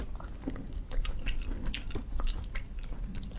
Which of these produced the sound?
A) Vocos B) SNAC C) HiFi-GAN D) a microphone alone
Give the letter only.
D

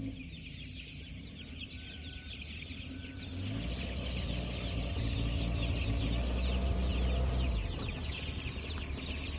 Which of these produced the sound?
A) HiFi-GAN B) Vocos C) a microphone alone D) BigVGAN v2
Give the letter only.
C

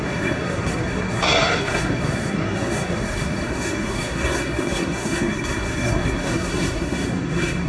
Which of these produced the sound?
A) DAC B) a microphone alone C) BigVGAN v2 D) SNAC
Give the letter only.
D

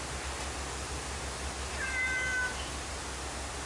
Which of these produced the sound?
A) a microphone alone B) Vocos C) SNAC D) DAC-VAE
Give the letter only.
A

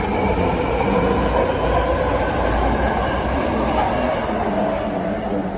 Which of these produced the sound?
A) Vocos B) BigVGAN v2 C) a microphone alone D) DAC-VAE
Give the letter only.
C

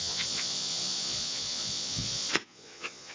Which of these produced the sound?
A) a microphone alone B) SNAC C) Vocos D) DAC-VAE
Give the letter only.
C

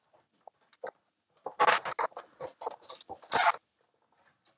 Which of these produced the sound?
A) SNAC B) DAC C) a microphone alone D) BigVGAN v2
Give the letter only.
C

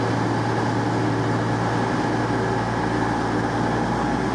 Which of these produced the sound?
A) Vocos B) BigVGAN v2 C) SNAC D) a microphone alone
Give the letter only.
D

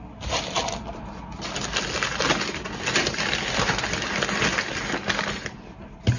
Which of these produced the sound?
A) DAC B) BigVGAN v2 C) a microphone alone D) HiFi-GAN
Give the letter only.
C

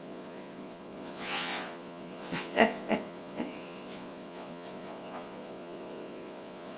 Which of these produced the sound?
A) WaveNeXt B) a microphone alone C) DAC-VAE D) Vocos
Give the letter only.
D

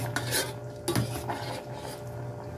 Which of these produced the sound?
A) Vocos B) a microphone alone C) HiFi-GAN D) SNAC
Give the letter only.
B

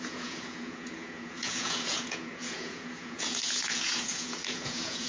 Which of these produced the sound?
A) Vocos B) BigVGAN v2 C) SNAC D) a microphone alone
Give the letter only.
A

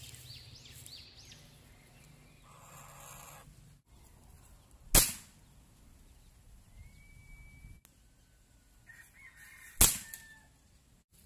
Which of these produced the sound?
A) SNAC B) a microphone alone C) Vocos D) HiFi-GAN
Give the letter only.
B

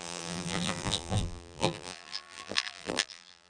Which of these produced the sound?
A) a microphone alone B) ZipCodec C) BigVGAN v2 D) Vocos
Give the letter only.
C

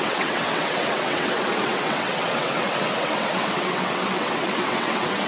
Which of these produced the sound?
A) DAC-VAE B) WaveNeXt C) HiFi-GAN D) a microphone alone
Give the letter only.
B